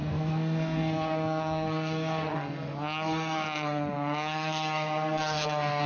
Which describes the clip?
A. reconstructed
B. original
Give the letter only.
A